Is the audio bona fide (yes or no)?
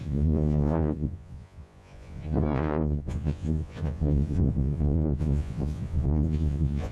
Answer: no